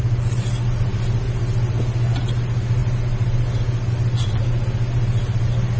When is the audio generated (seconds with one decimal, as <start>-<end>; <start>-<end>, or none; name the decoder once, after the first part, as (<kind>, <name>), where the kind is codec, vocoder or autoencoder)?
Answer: none